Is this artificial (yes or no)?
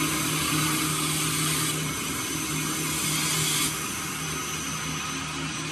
no